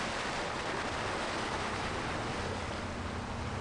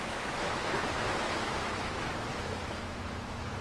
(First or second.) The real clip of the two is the first